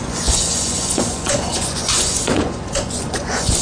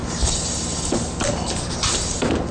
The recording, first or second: second